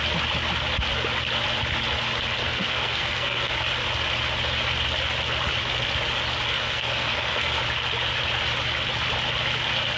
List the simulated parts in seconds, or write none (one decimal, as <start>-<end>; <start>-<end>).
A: 2.4-3.5; 6.6-7.6